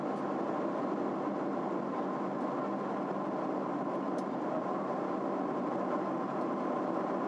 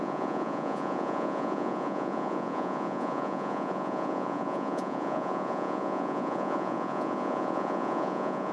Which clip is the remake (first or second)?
second